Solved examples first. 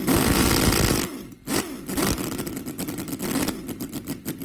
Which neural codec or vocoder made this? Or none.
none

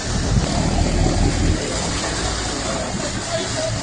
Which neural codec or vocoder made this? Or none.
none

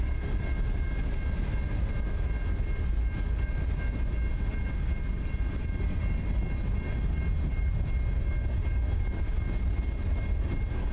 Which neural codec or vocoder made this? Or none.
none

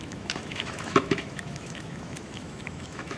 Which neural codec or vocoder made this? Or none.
autoencoder, DAC-VAE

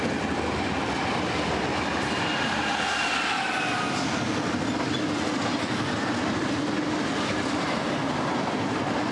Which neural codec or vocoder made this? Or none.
none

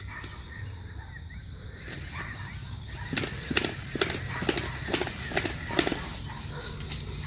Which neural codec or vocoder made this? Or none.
none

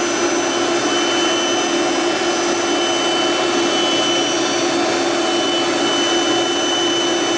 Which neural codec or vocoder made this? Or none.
none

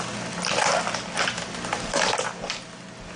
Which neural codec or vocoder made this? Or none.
none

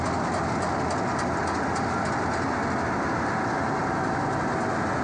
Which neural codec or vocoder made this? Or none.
none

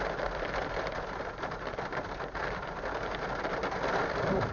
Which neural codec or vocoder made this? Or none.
vocoder, BigVGAN v2